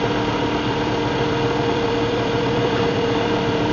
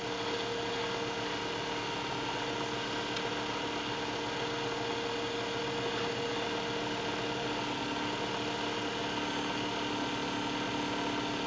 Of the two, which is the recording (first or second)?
second